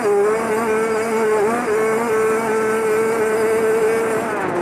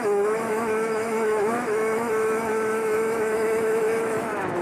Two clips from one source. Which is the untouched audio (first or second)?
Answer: first